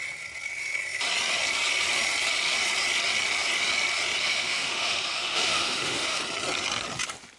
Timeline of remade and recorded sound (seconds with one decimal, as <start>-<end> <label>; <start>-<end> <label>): 0.0-4.2 recorded; 4.2-6.2 remade; 6.2-7.4 recorded